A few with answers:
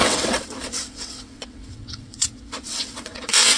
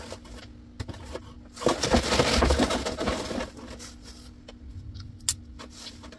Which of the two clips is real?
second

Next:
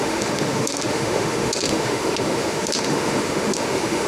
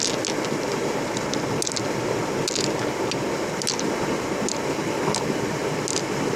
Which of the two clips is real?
second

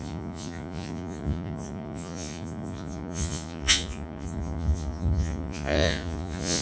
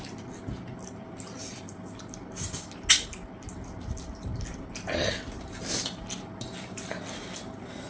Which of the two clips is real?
second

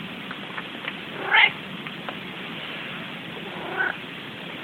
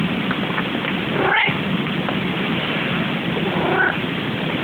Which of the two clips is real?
first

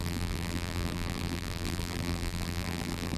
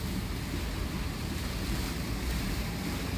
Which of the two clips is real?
second